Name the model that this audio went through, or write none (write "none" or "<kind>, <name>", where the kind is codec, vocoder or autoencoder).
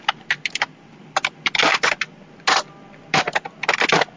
none